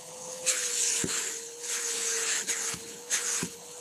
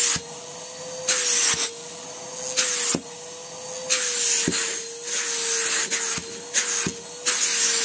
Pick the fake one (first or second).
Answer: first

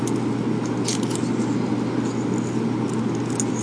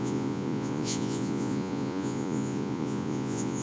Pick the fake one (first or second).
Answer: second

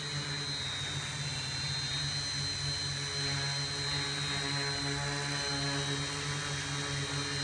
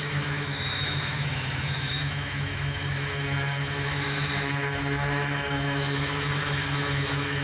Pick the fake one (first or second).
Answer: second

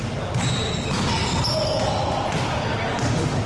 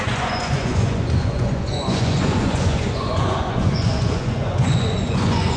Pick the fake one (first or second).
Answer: second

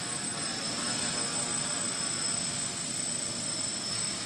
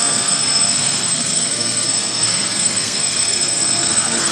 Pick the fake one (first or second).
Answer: second